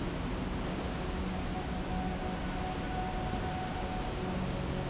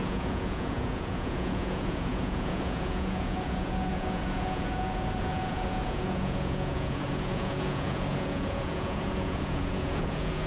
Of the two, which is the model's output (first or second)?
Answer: second